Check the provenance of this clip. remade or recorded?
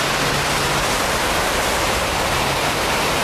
recorded